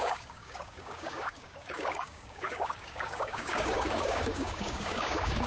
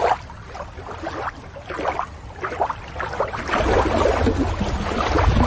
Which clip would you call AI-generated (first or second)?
first